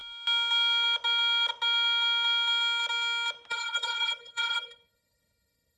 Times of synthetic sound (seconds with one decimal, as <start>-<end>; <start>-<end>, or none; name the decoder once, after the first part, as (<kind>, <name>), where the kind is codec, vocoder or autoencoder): 3.5-5.8 (codec, HILCodec)

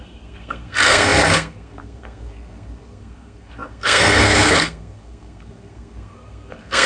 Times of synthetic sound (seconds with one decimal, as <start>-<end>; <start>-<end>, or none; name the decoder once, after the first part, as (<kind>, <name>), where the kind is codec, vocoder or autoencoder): 0.0-6.9 (codec, SNAC)

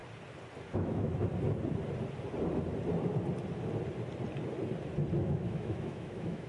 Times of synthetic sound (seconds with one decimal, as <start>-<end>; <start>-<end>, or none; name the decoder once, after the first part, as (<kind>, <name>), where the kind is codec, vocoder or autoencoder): 0.7-1.3 (autoencoder, DAC-VAE); 5.2-6.5